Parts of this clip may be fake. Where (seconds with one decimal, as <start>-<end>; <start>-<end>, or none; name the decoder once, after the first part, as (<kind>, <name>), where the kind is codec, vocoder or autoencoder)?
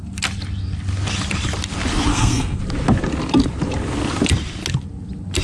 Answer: 2.1-2.6 (codec, SNAC)